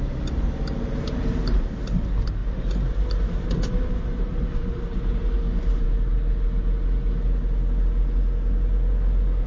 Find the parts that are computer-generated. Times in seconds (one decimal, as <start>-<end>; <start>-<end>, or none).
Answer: 2.4-5.9